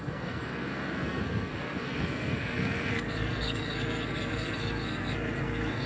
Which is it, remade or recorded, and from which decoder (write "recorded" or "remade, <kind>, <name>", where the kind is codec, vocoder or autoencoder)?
remade, codec, SNAC